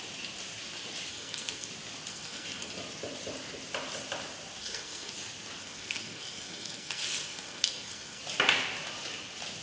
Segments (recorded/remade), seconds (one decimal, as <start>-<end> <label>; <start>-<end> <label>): 0.0-1.1 recorded; 1.1-1.7 remade; 1.7-2.1 recorded; 2.1-2.7 remade; 2.7-4.6 recorded; 4.6-5.1 remade; 5.1-5.6 recorded; 5.6-8.2 remade; 8.2-9.6 recorded